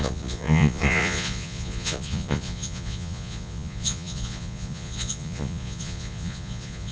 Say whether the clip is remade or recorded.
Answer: remade